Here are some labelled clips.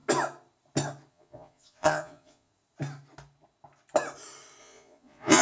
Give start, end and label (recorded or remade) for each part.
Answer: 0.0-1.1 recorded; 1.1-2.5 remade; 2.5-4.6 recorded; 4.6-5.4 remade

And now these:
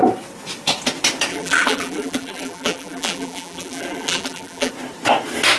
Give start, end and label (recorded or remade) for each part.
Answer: 0.0-1.3 recorded; 1.3-4.7 remade; 4.7-5.6 recorded

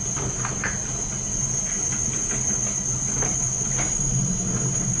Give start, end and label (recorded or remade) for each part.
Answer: 0.0-5.0 recorded

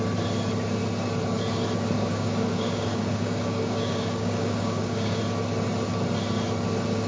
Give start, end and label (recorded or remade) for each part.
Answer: 0.0-2.1 recorded; 2.1-5.2 remade; 5.2-7.1 recorded

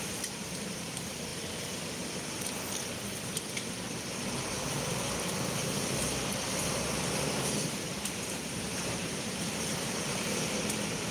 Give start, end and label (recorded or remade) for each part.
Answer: 0.0-1.3 remade; 1.3-6.3 recorded; 6.3-11.1 remade